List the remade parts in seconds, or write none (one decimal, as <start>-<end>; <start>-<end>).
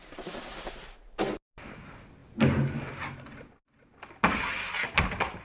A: none